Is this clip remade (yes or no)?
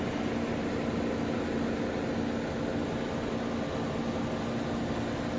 no